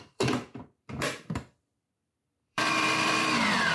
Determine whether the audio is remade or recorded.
remade